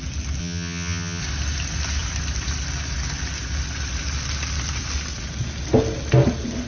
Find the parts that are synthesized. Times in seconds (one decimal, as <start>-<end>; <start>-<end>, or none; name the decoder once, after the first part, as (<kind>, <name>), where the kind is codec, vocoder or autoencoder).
0.4-1.2 (vocoder, HiFi-GAN)